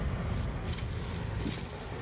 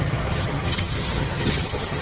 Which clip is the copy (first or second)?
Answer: second